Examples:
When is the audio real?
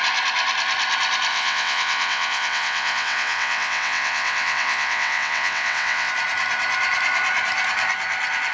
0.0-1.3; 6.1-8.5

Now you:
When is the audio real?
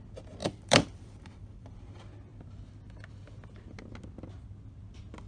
0.0-0.4; 1.8-5.3